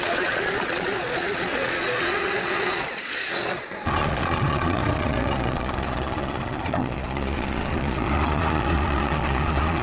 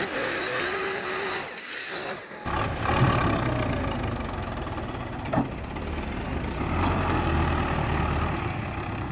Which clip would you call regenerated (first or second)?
first